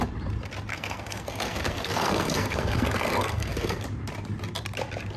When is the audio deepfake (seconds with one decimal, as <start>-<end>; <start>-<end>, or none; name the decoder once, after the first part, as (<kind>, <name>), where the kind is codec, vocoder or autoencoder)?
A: 0.7-3.8 (codec, SNAC)